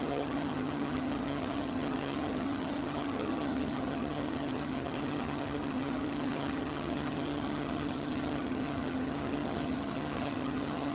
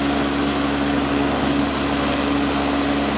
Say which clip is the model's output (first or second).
first